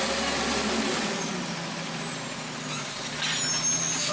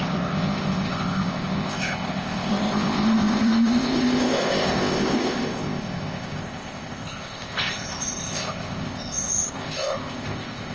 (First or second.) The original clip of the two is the first